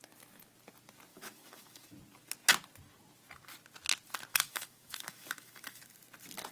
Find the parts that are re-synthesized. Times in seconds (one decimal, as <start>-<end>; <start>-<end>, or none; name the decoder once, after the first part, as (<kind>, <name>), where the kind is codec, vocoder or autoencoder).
1.1-1.9 (autoencoder, DAC-VAE); 4.3-5.8

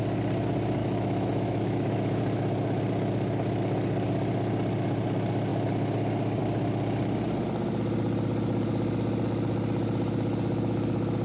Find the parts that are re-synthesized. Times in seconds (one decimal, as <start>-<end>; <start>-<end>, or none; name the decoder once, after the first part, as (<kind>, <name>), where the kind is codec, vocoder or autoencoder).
0.8-2.2 (autoencoder, DAC-VAE)

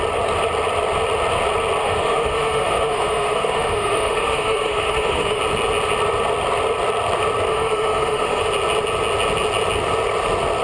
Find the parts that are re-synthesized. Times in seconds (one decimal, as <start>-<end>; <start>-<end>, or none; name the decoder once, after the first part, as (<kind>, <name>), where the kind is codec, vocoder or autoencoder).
1.8-5.4 (autoencoder, DAC-VAE); 7.5-8.4

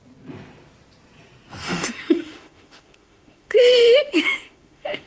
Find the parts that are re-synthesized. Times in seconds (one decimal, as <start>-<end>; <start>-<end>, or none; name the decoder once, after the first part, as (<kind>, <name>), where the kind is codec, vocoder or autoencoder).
1.6-5.1 (autoencoder, DAC-VAE)

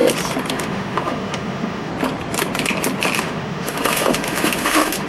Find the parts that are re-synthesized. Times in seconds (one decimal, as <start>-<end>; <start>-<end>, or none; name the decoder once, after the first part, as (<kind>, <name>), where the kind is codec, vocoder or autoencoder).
0.5-1.9 (autoencoder, DAC-VAE); 3.2-5.1

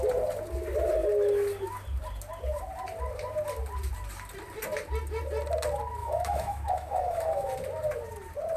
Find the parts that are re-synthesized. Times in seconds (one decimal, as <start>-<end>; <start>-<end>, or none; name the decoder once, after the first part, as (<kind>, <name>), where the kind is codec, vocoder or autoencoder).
6.0-7.5 (autoencoder, DAC-VAE)